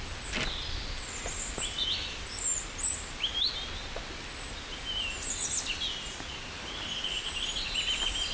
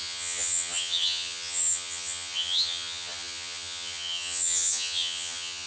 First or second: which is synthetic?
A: second